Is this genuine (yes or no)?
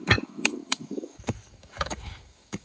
no